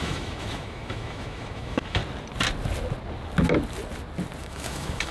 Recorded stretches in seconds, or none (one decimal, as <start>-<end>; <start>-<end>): 2.0-4.4